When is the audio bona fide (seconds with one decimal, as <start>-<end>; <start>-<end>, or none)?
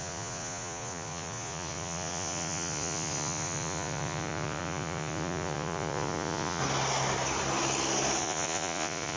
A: 6.6-8.2